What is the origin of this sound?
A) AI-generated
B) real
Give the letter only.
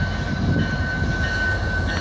B